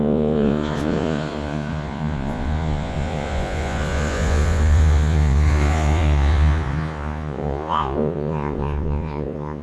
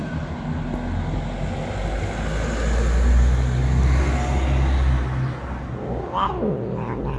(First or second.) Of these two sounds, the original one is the second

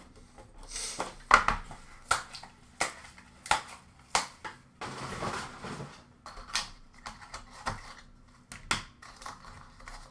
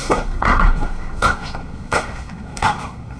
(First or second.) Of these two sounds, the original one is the first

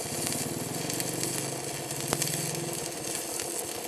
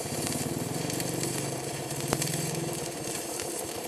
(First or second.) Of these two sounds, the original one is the first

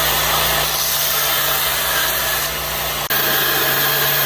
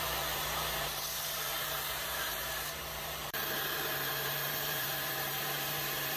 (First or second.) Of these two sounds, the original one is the first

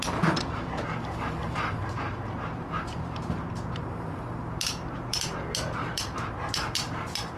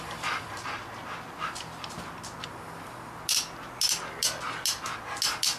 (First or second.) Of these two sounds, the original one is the second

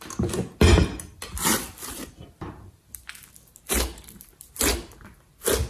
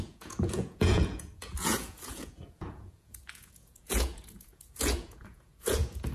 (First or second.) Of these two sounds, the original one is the first